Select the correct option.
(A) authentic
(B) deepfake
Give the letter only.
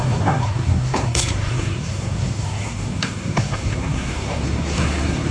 B